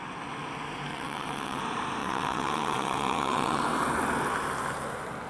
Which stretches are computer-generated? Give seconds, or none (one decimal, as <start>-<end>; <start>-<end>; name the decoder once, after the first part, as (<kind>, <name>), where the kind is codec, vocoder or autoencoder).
0.9-1.6 (vocoder, WaveNeXt); 2.0-3.6